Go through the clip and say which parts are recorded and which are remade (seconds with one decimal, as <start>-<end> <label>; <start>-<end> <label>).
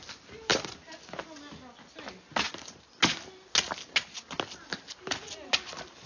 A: 0.0-6.1 recorded